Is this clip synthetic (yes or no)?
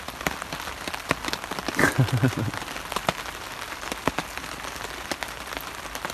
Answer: no